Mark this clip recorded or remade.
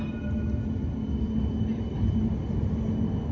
recorded